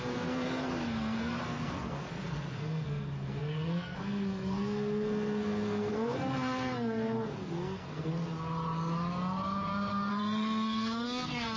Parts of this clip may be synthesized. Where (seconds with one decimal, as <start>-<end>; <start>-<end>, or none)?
0.0-8.1; 10.1-11.6